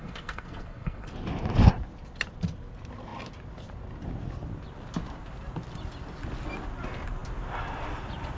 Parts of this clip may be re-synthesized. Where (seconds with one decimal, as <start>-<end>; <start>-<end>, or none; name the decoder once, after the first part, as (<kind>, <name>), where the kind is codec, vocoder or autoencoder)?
0.0-1.1 (codec, SNAC)